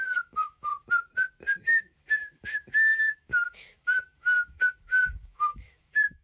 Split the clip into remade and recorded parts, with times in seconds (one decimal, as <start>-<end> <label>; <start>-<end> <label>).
0.0-0.7 remade; 0.7-1.6 recorded; 1.6-6.2 remade